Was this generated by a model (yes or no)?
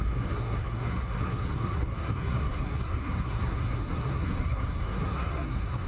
yes